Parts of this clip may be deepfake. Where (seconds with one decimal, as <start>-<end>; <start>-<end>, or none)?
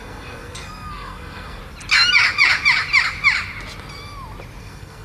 0.0-1.6; 4.6-5.0